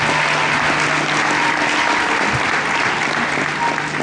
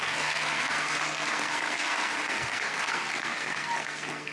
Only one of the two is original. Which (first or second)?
first